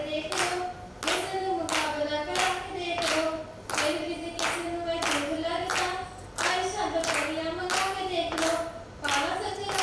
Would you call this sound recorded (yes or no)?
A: yes